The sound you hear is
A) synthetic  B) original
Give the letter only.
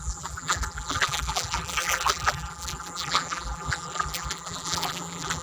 A